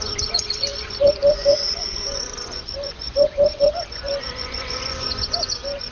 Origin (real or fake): fake